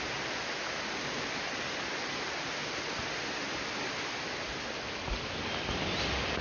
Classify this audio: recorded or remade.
recorded